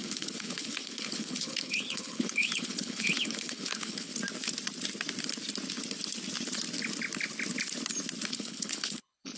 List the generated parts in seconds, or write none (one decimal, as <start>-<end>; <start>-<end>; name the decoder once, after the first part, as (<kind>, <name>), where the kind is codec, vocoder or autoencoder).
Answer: 0.0-4.1 (codec, HILCodec); 8.3-9.4